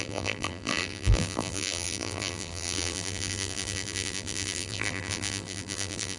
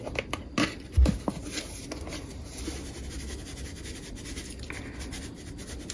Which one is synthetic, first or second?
first